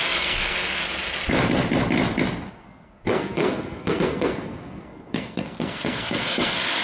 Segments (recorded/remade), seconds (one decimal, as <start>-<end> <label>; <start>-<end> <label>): 0.0-0.8 remade; 0.8-2.5 recorded; 2.5-6.8 remade